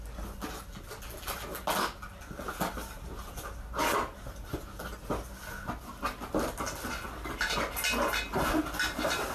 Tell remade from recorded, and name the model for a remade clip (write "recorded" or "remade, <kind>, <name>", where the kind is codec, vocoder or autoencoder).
recorded